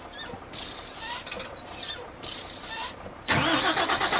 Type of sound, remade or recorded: recorded